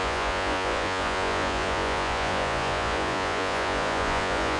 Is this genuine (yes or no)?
no